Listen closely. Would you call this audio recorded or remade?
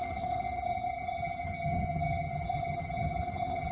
remade